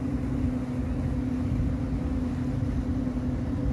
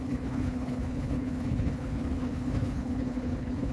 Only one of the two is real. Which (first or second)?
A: first